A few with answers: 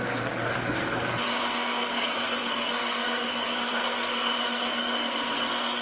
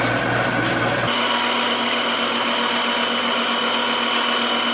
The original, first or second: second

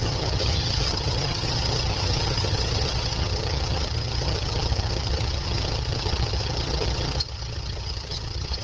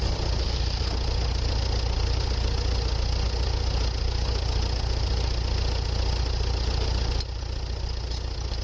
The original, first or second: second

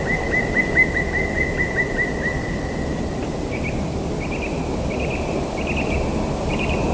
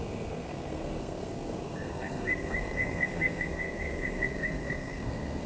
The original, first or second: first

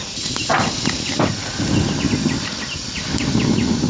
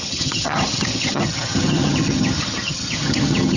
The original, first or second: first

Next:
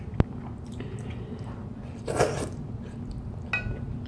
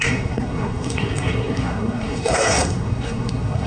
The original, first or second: first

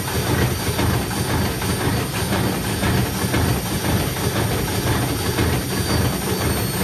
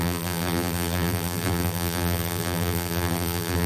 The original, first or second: first